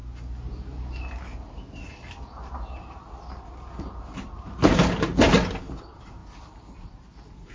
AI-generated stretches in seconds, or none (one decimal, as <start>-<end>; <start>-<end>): 3.8-5.1; 5.8-6.2; 6.7-7.5